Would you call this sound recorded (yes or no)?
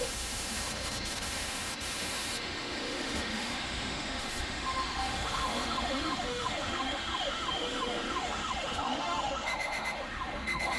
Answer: no